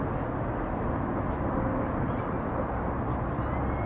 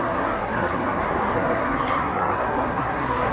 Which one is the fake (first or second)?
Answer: second